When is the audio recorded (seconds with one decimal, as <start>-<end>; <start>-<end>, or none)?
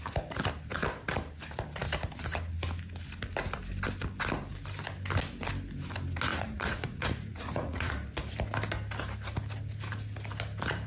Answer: 0.0-6.3; 7.9-10.9